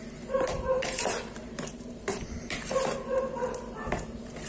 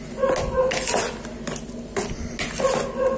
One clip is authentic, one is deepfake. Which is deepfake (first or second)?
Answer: first